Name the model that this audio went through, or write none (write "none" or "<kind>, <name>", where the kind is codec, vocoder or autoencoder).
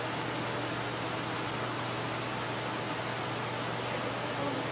none